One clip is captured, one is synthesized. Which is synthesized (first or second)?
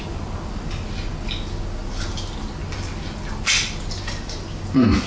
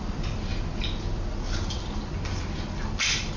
second